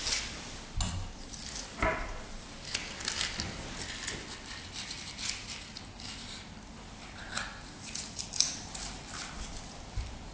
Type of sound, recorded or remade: recorded